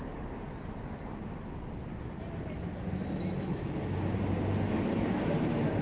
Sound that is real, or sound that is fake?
real